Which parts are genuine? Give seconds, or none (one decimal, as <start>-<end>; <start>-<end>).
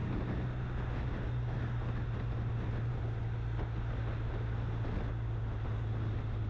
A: 0.0-6.5